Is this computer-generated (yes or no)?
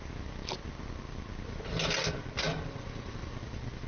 no